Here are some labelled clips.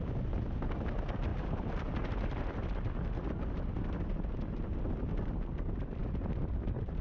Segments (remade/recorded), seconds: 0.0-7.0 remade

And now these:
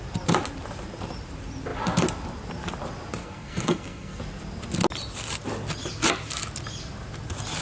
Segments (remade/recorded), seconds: 0.0-3.2 recorded; 3.2-4.2 remade; 4.2-7.6 recorded

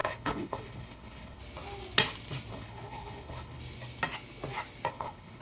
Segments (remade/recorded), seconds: 0.0-1.4 remade; 1.4-2.5 recorded; 2.5-3.6 remade; 3.6-4.9 recorded; 4.9-5.4 remade

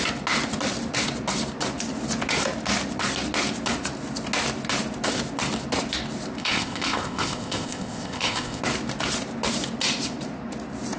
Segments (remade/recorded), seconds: 0.0-6.4 recorded; 6.4-8.6 remade; 8.6-11.0 recorded

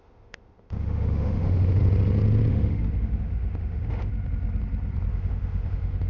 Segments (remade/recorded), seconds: 0.0-1.8 remade; 1.8-2.5 recorded; 2.5-4.1 remade; 4.1-5.1 recorded; 5.1-6.1 remade